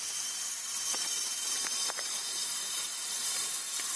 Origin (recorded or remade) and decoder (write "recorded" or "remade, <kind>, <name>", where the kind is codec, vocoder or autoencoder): remade, vocoder, BigVGAN v2